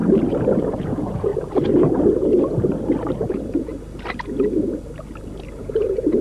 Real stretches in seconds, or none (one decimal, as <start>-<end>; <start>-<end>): 0.0-0.6; 1.3-3.3; 3.7-5.6